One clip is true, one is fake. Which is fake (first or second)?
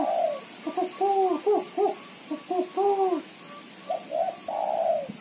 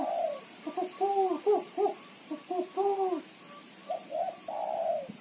second